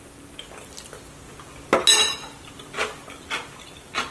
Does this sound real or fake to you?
real